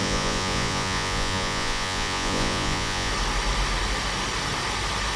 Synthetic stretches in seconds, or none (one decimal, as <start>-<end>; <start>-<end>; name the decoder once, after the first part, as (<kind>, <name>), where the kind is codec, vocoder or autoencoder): 0.0-3.1 (vocoder, Vocos)